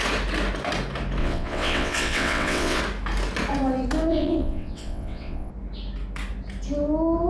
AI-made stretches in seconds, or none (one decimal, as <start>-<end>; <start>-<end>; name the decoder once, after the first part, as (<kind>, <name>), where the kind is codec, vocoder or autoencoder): 1.2-2.8 (vocoder, WaveNeXt); 4.1-5.5

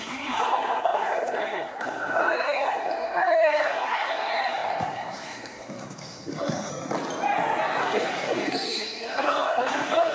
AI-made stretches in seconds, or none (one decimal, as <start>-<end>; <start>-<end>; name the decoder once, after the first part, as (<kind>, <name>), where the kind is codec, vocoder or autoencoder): 0.0-6.7 (codec, SNAC); 7.8-10.1

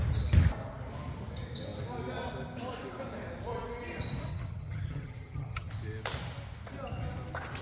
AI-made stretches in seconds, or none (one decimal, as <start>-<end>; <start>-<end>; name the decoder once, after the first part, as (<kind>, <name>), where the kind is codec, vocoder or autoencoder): 4.3-5.7 (vocoder, HiFi-GAN)

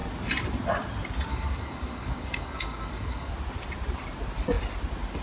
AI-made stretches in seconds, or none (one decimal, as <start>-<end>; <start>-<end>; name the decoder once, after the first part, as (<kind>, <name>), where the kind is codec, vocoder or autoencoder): 1.3-3.3 (codec, DAC)

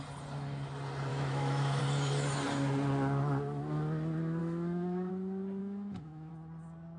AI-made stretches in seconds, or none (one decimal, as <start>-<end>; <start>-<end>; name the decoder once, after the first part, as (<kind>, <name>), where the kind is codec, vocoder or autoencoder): 1.1-1.8 (autoencoder, DAC-VAE); 4.4-5.1; 5.6-6.3

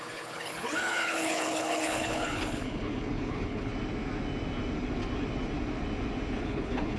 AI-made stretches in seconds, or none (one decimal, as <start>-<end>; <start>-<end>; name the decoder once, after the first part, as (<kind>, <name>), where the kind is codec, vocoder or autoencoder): 0.0-3.7 (codec, HILCodec); 6.4-7.0

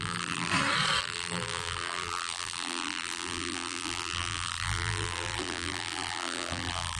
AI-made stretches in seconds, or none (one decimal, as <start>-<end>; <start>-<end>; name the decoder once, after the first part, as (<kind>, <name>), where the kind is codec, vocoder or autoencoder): 0.0-0.5 (vocoder, BigVGAN v2); 1.0-7.0

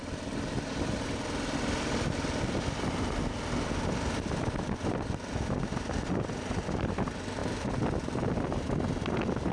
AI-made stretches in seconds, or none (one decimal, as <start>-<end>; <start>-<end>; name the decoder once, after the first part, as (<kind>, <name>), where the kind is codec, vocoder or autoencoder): none